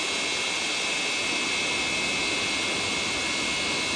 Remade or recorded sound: recorded